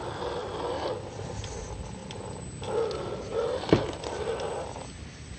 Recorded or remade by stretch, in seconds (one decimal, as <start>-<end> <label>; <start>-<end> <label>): 0.0-5.4 recorded